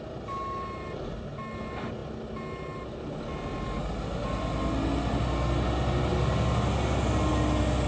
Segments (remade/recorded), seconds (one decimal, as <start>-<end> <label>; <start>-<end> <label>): 0.0-7.9 recorded